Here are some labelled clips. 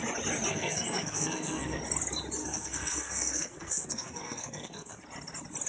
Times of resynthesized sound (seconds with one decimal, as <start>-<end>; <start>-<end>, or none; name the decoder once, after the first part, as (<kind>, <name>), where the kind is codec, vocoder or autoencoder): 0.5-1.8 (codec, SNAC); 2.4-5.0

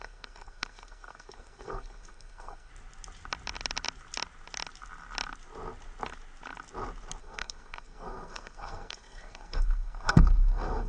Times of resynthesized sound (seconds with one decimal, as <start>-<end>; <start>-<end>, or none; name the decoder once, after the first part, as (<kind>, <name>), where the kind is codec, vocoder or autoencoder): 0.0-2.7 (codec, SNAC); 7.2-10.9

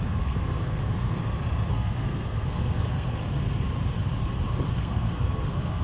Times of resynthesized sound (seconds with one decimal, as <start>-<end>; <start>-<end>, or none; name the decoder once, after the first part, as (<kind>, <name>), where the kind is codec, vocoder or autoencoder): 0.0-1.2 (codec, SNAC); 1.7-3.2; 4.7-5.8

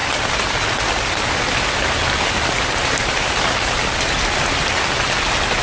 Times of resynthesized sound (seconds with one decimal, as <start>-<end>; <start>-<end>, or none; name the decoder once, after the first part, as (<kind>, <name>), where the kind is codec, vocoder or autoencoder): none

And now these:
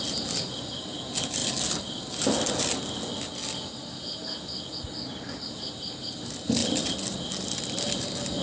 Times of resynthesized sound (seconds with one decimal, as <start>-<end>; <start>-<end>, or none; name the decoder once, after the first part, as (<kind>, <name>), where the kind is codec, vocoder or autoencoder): none

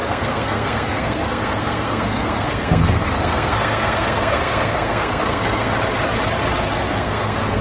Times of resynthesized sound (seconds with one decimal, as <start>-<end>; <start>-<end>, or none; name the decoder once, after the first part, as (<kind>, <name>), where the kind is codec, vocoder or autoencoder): 0.0-5.7 (codec, SNAC); 6.9-7.6